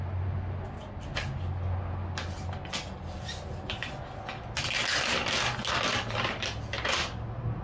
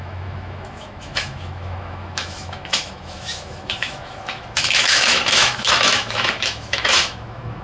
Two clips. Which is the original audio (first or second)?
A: first